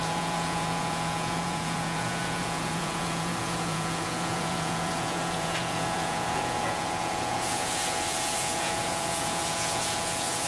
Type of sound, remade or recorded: remade